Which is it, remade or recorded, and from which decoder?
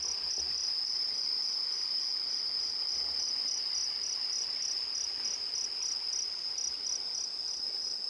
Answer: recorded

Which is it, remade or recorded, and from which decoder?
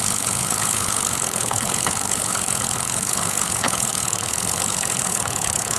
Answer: remade, codec, HILCodec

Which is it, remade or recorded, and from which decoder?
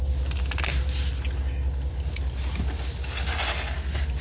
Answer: recorded